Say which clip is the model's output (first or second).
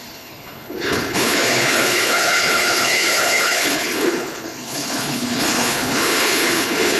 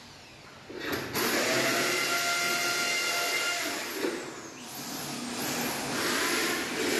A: first